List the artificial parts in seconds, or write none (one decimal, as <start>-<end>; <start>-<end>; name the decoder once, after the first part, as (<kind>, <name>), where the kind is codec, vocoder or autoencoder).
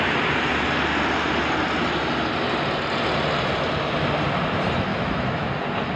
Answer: 4.9-5.5 (autoencoder, DAC-VAE)